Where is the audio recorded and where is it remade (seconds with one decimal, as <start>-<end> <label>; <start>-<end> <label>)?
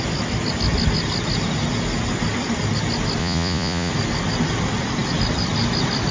0.0-3.2 recorded; 3.2-3.9 remade; 3.9-6.1 recorded